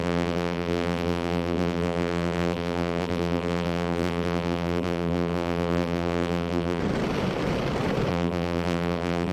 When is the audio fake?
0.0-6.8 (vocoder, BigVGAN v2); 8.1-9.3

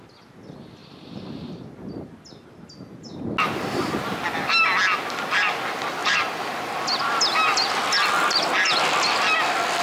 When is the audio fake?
0.8-1.6 (vocoder, BigVGAN v2); 6.0-7.2

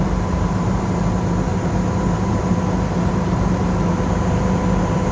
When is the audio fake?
0.0-5.1 (vocoder, BigVGAN v2)